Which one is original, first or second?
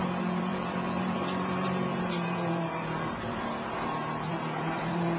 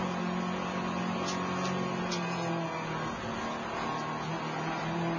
second